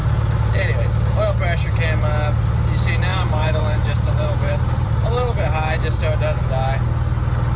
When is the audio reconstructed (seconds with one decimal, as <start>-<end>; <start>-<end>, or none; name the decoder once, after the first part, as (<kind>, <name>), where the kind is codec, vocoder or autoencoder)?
3.1-5.8 (vocoder, BigVGAN v2)